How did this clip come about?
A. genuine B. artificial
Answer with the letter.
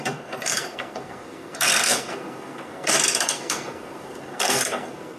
B